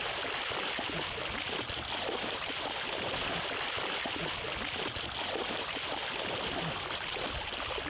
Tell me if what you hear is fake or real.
real